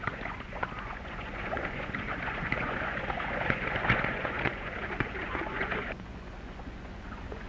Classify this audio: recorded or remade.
remade